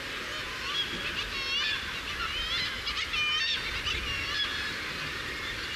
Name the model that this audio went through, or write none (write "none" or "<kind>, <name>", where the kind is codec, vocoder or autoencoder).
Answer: none